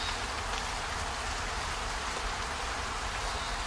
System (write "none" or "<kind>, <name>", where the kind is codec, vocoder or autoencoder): none